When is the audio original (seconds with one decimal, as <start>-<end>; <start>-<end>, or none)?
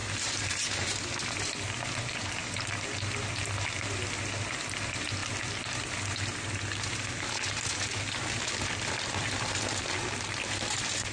0.0-11.1